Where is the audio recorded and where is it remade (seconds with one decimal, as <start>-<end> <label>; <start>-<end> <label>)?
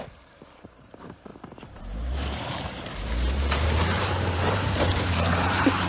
0.0-5.9 remade